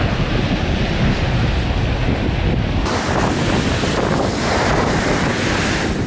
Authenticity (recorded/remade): recorded